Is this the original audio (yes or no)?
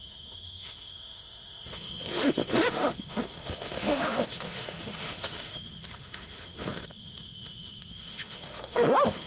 no